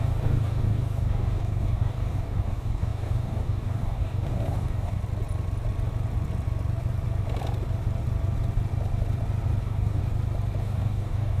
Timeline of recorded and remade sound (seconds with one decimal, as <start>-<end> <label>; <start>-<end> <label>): 0.0-5.0 remade; 5.0-9.6 recorded; 9.6-10.0 remade; 10.0-10.6 recorded; 10.6-11.4 remade